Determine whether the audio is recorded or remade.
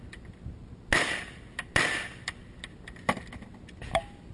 recorded